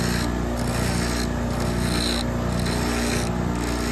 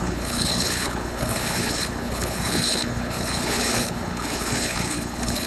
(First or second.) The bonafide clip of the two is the first